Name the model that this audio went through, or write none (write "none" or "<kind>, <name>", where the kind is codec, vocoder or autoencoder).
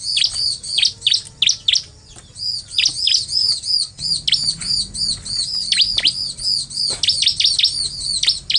none